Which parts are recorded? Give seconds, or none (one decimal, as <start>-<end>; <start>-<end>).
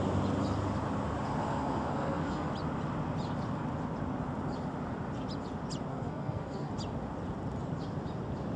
0.0-1.4; 2.5-5.9; 6.7-8.6